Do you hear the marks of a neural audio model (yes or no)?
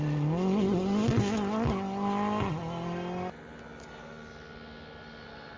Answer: no